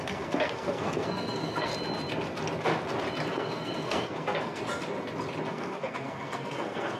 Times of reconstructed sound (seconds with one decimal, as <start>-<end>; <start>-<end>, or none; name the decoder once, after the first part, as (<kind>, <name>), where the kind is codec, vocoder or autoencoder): 0.0-1.7 (codec, SNAC); 3.3-4.6; 5.5-7.0